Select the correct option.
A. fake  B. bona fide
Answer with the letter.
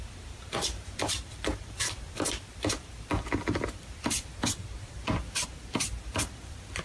A